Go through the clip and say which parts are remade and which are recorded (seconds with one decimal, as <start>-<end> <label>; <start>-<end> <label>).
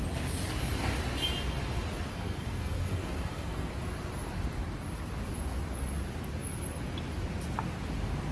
0.0-2.1 recorded; 2.1-3.7 remade; 3.7-8.3 recorded